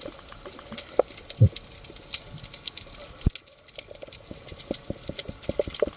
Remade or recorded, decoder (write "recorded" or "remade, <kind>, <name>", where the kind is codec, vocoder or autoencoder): recorded